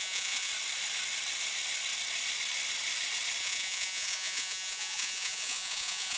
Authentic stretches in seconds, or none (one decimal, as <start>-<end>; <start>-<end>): 0.5-3.4